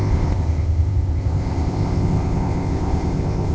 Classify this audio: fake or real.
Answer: fake